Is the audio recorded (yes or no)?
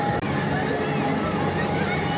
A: yes